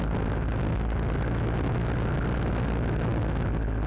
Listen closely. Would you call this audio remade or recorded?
recorded